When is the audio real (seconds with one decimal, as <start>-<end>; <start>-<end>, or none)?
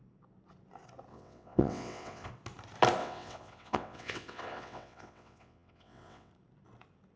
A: 0.0-1.1; 2.3-3.0; 6.3-7.2